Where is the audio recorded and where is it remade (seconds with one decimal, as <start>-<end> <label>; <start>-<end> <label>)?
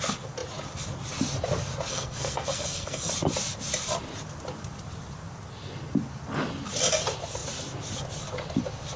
0.0-1.9 recorded; 1.9-3.1 remade; 3.1-9.0 recorded